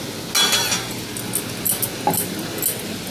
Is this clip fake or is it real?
real